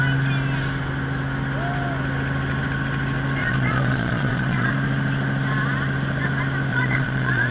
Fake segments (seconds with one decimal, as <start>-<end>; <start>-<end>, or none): 3.4-4.7; 6.7-7.5